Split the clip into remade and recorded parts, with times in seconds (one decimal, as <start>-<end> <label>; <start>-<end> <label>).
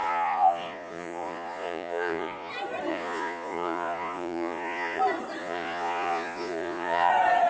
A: 0.0-2.5 remade; 2.5-2.9 recorded; 2.9-5.0 remade; 5.0-5.4 recorded; 5.4-7.1 remade; 7.1-7.5 recorded